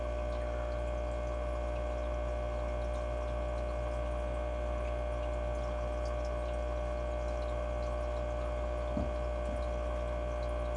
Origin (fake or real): real